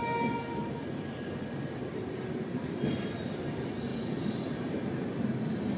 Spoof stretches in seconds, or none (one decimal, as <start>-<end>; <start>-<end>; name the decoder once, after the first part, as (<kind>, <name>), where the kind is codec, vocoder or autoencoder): none